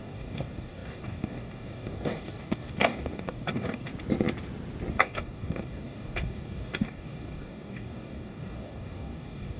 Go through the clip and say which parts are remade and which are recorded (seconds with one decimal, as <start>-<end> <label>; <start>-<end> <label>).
0.0-3.9 remade; 3.9-4.9 recorded; 4.9-9.6 remade